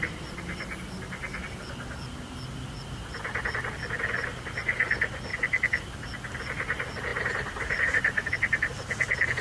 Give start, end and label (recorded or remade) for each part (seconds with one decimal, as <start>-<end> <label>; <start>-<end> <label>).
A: 0.0-7.1 recorded; 7.1-8.7 remade; 8.7-9.4 recorded